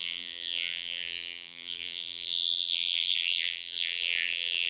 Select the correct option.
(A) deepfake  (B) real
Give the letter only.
A